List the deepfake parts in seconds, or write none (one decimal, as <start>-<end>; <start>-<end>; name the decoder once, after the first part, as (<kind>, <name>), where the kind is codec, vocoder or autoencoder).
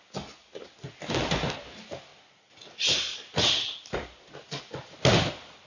none